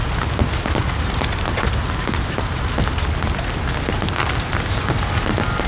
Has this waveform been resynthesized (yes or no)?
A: no